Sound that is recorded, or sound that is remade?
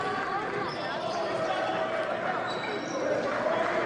recorded